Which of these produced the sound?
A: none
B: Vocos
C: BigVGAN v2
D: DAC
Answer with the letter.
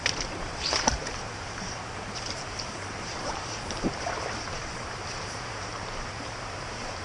C